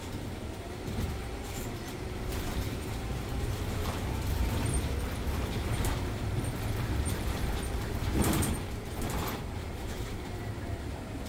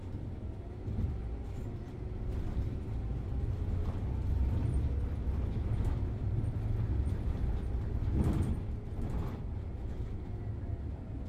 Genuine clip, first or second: second